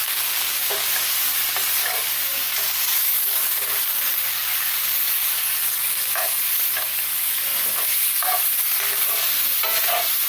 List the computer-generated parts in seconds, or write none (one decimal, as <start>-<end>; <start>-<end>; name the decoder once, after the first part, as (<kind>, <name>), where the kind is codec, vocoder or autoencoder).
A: 0.0-1.0 (codec, DAC); 1.8-6.4